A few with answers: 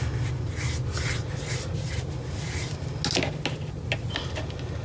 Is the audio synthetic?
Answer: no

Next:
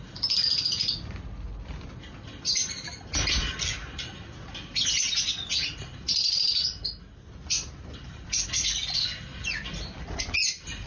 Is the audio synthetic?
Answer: no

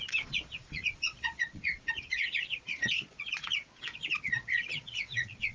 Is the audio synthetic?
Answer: yes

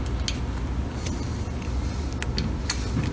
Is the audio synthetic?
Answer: no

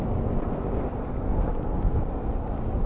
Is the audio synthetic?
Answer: no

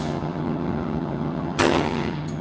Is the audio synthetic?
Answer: yes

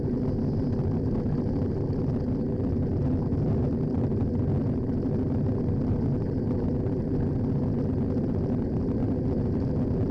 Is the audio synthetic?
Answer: no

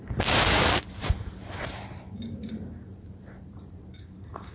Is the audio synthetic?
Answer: yes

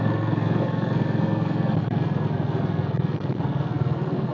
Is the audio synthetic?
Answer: yes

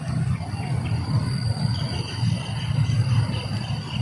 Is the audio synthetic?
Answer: no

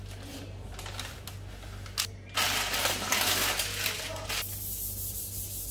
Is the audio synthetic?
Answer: no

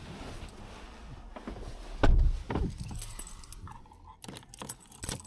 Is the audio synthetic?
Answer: no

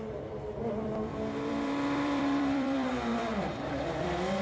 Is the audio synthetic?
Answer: yes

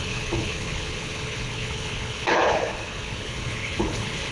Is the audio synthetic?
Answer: yes